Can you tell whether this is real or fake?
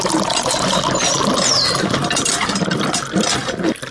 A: real